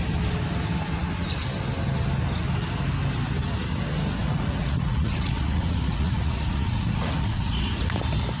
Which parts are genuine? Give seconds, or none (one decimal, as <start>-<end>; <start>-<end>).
0.0-4.2; 8.0-8.4